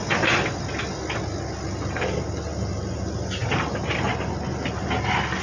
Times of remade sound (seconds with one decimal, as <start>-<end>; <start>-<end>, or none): none